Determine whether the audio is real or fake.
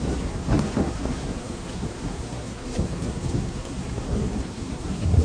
fake